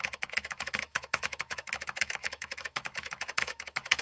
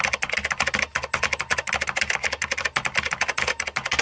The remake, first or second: first